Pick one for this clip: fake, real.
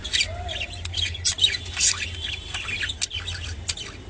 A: real